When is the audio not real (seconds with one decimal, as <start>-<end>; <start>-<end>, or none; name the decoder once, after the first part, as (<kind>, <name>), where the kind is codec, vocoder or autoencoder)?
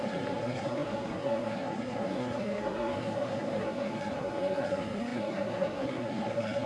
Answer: 0.0-6.7 (codec, SNAC)